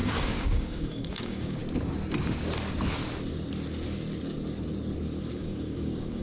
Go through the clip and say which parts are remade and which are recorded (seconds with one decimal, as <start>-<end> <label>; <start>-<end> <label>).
0.0-1.6 remade; 1.6-5.3 recorded; 5.3-6.2 remade